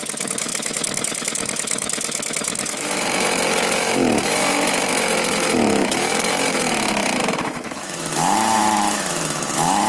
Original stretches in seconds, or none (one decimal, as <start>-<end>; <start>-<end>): none